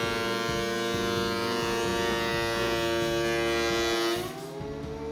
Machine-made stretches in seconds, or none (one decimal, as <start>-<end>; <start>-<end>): none